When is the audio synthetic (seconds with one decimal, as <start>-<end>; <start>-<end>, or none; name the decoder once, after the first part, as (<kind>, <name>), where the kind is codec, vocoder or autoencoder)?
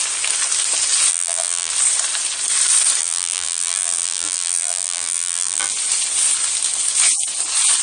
1.1-1.7 (vocoder, BigVGAN v2); 3.0-5.7